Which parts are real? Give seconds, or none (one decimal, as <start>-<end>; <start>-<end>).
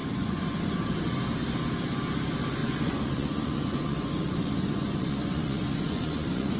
0.8-2.6